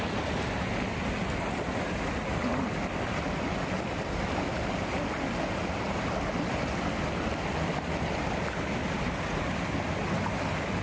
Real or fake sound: real